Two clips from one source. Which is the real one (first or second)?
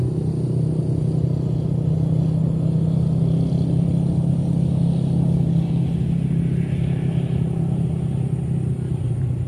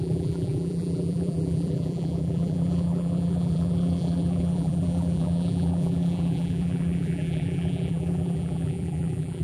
first